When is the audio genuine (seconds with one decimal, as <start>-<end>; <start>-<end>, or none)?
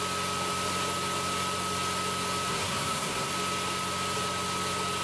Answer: 0.0-2.5; 3.3-5.0